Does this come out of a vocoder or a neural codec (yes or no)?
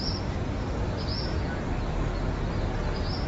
no